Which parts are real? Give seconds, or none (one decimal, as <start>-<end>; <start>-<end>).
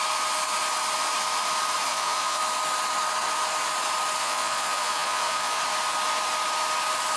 0.0-1.9; 2.4-4.2; 5.6-7.2